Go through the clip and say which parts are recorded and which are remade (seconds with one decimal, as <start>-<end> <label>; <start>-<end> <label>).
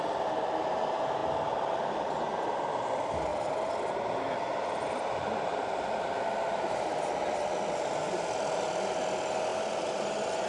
0.0-10.5 recorded